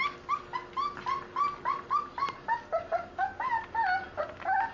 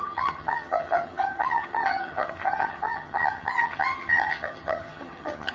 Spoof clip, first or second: second